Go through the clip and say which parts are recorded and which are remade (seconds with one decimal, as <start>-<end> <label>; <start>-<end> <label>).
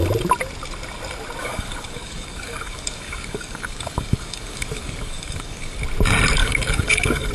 0.0-1.4 recorded; 1.4-5.8 remade; 5.8-6.4 recorded; 6.4-7.3 remade